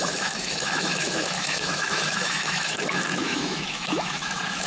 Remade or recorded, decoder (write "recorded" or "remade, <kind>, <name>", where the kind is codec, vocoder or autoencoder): remade, autoencoder, DAC-VAE